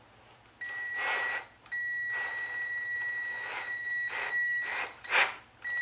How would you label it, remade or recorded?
recorded